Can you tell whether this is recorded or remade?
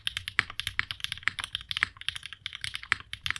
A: recorded